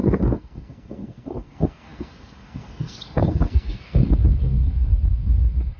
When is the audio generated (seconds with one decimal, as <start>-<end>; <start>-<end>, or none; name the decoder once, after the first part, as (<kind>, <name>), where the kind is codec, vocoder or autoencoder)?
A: 0.0-5.8 (codec, SNAC)